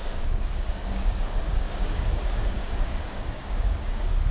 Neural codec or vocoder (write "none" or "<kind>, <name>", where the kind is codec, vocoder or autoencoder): codec, DAC